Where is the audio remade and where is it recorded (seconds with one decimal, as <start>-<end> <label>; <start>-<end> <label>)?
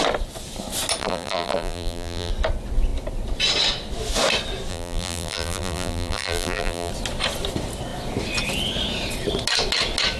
0.0-1.0 recorded; 1.0-2.3 remade; 2.3-4.7 recorded; 4.7-6.9 remade; 6.9-10.2 recorded